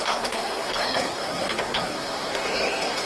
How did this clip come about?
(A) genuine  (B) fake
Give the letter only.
B